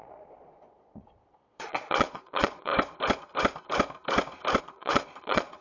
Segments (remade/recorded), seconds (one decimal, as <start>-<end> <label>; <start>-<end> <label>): 0.0-2.7 remade; 2.7-4.6 recorded; 4.6-5.6 remade